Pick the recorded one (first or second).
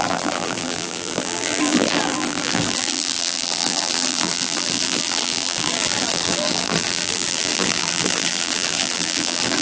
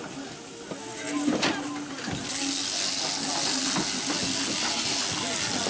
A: second